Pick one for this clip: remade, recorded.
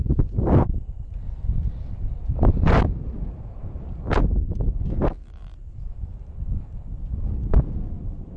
recorded